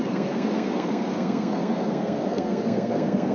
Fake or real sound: fake